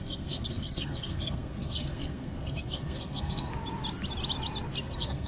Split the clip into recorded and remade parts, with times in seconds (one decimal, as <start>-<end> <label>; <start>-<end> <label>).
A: 0.0-3.5 remade; 3.5-4.8 recorded; 4.8-5.3 remade